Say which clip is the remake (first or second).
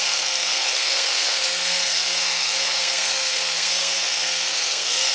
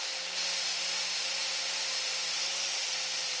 first